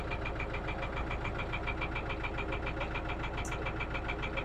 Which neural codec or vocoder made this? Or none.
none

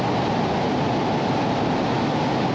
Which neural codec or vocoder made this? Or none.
none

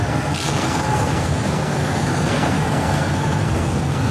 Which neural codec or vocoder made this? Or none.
codec, SNAC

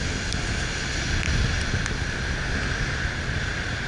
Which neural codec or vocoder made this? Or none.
none